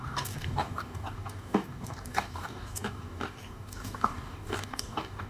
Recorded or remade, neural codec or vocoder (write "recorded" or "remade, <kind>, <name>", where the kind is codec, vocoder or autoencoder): remade, codec, DAC